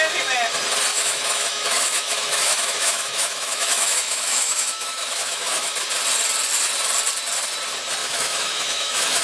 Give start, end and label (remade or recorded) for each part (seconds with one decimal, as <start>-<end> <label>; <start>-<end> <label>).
0.0-0.9 recorded; 0.9-5.7 remade; 5.7-8.0 recorded; 8.0-9.2 remade